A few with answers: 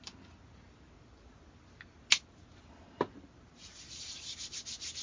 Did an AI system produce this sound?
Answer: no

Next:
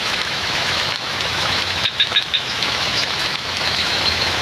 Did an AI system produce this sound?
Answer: yes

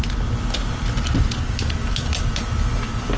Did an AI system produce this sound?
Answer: no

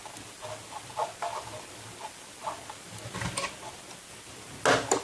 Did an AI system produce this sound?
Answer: no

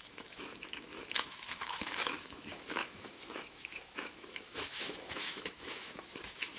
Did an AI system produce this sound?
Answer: yes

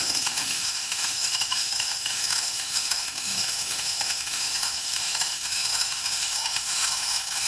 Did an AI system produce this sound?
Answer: yes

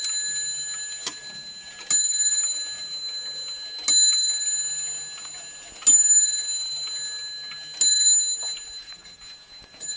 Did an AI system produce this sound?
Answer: no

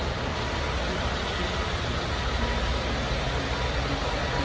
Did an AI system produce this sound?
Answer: no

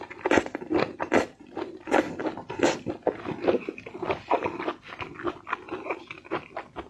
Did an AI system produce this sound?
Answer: no